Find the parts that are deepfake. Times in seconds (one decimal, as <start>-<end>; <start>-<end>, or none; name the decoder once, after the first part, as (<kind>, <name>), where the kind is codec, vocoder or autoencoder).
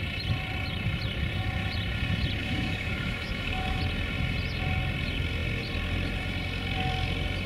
2.4-3.8 (autoencoder, DAC-VAE)